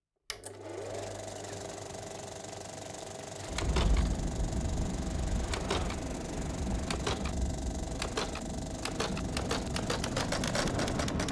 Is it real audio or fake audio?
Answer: real